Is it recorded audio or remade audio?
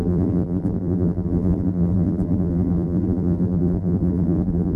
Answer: remade